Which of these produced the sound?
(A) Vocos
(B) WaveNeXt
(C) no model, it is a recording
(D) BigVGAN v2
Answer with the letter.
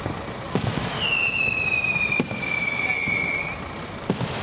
C